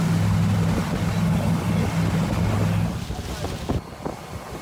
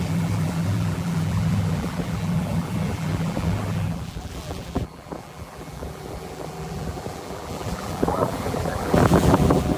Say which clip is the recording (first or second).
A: first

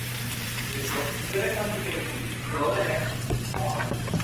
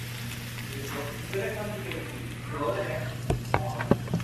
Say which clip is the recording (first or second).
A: second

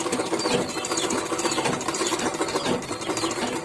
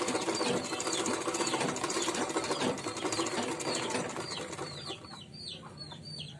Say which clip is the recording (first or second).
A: first